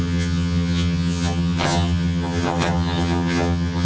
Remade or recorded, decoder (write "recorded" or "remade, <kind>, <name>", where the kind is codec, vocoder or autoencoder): remade, vocoder, HiFi-GAN